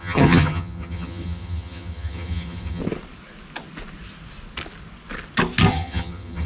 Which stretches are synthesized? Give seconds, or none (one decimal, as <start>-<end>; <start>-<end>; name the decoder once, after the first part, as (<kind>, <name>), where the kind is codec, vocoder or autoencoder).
0.0-2.8 (vocoder, HiFi-GAN); 5.7-6.5